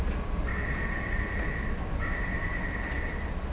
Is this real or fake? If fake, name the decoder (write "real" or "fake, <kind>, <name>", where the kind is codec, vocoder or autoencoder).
real